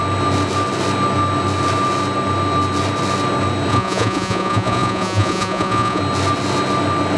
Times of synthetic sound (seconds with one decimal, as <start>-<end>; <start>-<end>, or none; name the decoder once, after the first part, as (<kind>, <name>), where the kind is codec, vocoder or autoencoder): 3.7-6.0 (vocoder, Vocos)